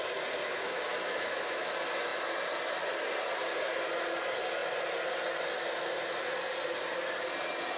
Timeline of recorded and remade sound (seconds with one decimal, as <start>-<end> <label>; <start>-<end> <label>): 0.0-0.4 recorded; 0.4-1.7 remade; 1.7-7.8 recorded